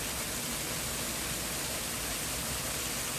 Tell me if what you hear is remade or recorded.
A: recorded